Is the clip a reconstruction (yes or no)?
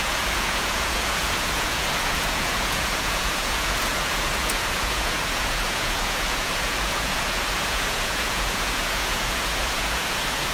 yes